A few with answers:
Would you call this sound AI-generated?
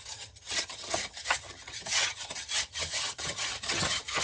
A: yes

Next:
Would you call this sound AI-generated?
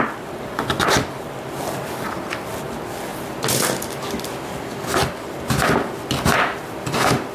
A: no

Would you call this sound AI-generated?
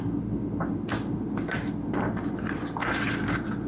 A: no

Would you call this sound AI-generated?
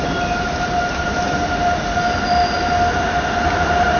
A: no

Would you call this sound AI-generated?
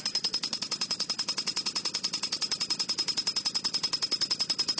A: no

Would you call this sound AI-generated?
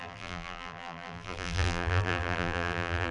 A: yes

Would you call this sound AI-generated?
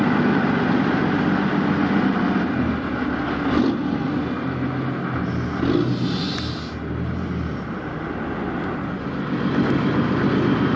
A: no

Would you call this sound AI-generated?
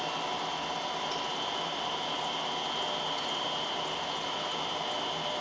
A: no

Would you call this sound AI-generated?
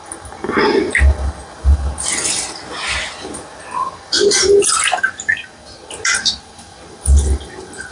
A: no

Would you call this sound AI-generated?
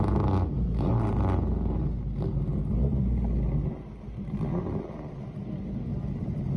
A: no